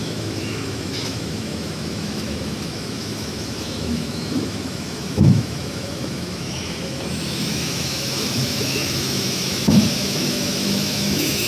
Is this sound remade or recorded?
remade